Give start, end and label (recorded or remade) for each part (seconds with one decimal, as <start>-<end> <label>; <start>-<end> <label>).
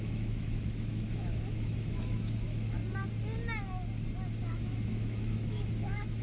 0.0-2.8 remade; 2.8-4.5 recorded; 4.5-6.2 remade